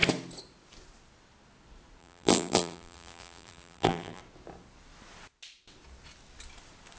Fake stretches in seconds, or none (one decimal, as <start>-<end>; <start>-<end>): 2.0-4.2